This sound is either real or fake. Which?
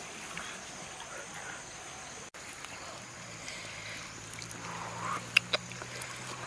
real